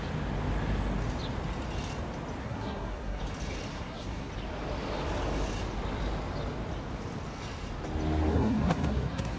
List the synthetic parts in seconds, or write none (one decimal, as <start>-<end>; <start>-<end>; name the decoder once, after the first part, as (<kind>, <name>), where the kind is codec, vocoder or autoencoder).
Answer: 2.4-3.2 (codec, SNAC); 3.7-4.3; 8.3-9.4